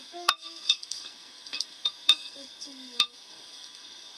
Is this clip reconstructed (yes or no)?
yes